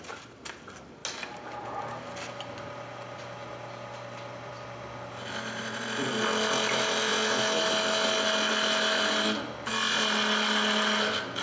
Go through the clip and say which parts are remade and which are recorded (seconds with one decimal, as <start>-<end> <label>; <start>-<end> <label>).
0.0-11.4 recorded